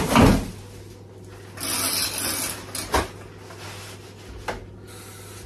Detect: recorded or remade recorded